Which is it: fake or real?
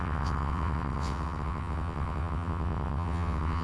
fake